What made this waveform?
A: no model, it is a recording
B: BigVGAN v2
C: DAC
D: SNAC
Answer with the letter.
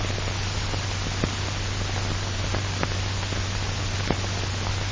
A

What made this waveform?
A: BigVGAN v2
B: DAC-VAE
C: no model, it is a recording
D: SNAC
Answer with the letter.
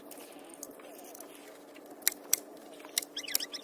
C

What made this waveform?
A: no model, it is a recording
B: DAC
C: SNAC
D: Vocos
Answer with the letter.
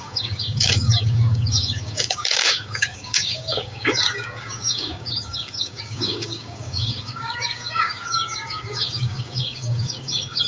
B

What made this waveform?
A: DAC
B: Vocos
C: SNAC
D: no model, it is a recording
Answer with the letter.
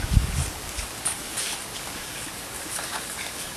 A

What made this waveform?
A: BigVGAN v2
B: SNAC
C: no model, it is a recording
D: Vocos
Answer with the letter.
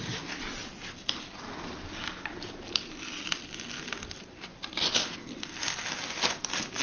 C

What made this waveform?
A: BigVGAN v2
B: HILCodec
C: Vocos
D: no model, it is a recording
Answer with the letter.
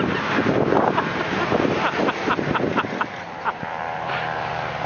A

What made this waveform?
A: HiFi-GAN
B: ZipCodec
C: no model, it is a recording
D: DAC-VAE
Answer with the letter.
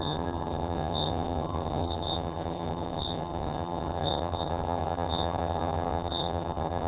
A